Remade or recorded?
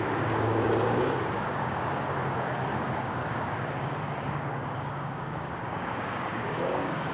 remade